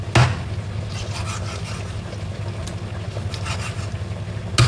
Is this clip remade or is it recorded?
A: recorded